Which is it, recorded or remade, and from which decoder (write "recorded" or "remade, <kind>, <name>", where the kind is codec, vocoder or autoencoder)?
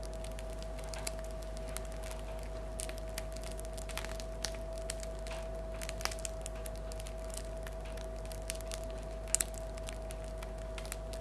recorded